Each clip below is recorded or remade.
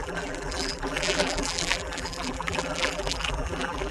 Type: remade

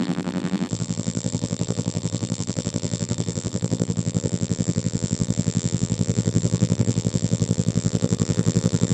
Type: remade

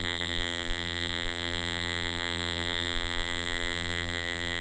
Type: remade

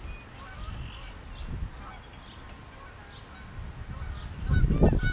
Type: recorded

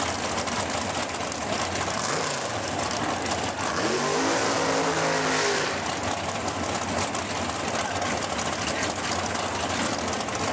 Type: recorded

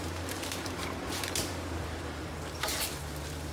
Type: remade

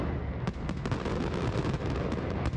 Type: recorded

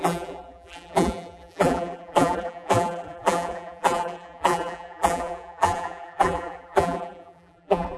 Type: remade